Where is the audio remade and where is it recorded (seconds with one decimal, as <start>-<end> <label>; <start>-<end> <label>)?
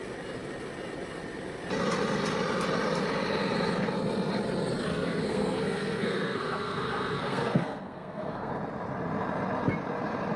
0.0-4.9 recorded; 4.9-8.5 remade; 8.5-10.4 recorded